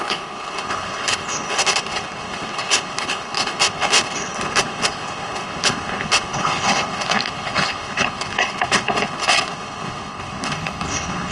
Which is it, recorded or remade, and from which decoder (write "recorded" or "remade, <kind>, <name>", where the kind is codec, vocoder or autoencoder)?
remade, codec, HILCodec